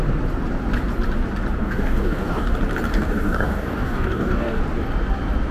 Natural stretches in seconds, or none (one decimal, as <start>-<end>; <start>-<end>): 0.0-1.6; 2.5-2.9; 4.6-5.5